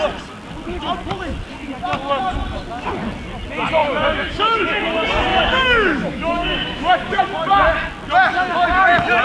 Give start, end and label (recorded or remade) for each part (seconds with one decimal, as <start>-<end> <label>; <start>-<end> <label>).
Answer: 0.0-3.8 recorded; 3.8-4.8 remade; 4.8-5.3 recorded; 5.3-7.2 remade; 7.2-9.2 recorded